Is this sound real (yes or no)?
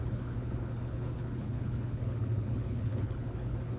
no